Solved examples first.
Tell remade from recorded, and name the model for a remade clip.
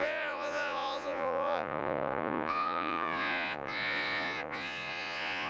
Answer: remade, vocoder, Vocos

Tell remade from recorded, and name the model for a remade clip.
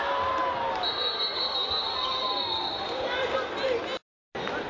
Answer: recorded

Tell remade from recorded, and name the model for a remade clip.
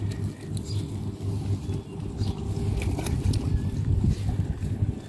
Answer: recorded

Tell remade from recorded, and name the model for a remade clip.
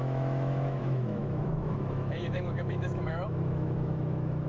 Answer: remade, autoencoder, DAC-VAE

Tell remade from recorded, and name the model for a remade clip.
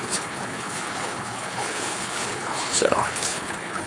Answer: remade, codec, HILCodec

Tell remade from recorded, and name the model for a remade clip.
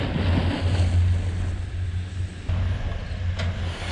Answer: recorded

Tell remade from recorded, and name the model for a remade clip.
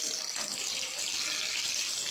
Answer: recorded